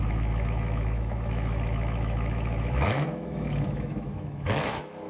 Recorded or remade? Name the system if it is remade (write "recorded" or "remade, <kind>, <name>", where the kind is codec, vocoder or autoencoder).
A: remade, autoencoder, DAC-VAE